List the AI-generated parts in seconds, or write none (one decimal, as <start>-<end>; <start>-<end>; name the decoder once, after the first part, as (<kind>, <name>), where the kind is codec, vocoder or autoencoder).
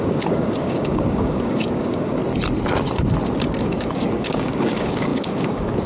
0.0-2.2 (codec, DAC); 3.6-5.9